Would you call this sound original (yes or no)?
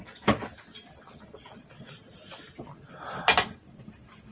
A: yes